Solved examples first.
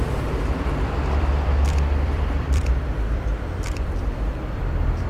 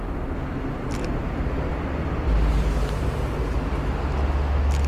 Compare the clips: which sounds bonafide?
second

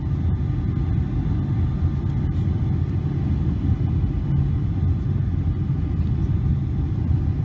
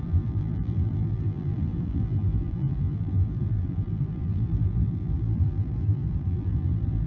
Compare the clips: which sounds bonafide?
first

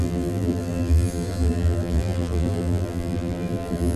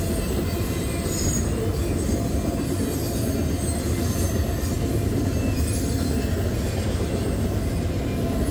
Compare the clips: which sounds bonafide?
second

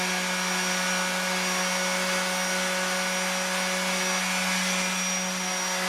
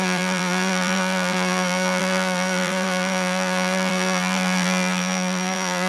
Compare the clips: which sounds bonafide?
first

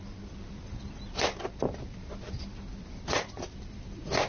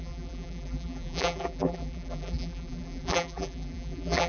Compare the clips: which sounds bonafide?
first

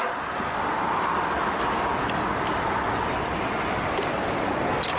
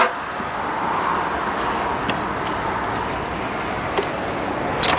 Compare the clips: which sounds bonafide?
second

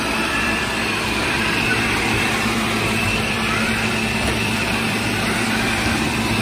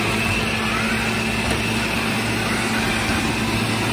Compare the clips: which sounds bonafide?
second